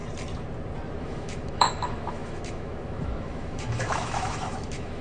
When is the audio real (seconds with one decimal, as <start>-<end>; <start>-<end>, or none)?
0.0-1.0